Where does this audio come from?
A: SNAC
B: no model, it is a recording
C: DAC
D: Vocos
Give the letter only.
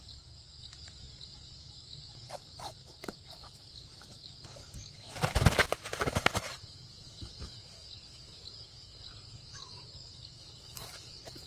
C